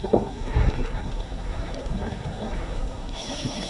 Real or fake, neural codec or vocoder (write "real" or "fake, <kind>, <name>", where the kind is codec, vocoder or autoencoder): fake, codec, SNAC